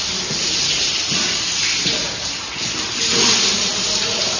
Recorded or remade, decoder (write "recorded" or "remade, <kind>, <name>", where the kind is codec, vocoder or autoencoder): recorded